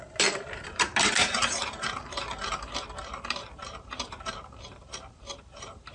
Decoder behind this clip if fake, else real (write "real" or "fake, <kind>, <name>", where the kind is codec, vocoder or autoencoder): fake, vocoder, BigVGAN v2